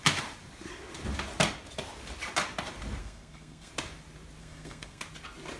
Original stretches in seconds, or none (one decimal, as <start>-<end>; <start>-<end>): 0.0-3.0; 3.7-4.4; 5.0-5.6